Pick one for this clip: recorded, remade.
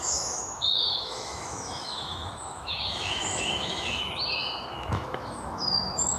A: remade